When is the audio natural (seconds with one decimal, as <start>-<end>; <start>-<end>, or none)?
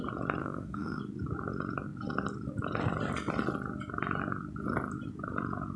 0.0-0.4; 1.0-5.8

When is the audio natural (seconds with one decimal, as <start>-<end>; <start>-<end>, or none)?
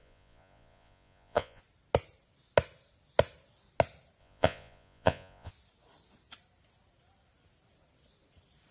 1.6-4.2; 5.5-8.7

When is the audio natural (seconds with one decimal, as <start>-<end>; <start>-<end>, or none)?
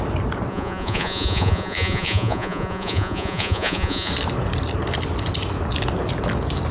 0.0-0.5; 4.1-6.7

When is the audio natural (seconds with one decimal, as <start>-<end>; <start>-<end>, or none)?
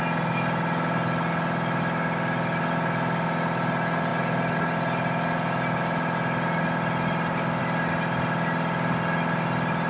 0.0-9.9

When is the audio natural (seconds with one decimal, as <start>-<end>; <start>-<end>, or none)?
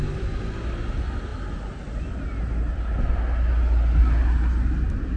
0.0-5.2